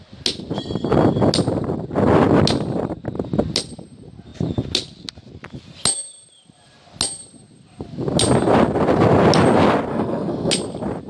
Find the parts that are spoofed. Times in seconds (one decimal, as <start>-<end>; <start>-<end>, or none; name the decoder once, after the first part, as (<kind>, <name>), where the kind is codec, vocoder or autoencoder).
9.9-10.5 (codec, SNAC)